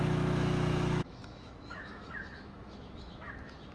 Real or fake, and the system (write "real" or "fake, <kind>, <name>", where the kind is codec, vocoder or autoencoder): fake, autoencoder, DAC-VAE